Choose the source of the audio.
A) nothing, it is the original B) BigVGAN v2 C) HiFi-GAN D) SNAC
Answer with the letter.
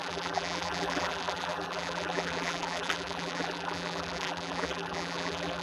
B